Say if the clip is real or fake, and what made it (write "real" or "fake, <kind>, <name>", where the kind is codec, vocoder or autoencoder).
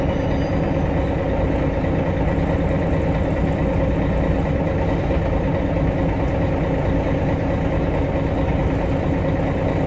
real